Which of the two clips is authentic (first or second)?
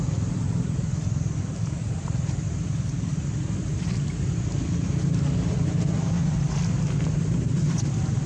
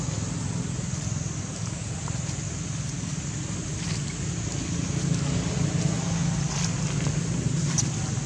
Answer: second